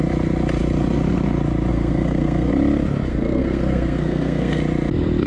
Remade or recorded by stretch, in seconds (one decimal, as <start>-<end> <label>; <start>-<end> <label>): 0.0-1.7 recorded; 1.7-2.5 remade; 2.5-3.1 recorded; 3.1-4.6 remade; 4.6-5.3 recorded